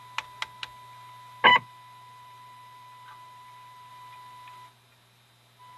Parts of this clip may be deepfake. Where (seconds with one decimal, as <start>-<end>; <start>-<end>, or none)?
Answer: 1.5-3.9